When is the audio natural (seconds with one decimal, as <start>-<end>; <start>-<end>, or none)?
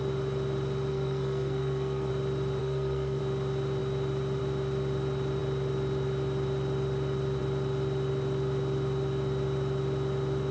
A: 0.0-0.9; 2.1-2.6; 3.2-10.5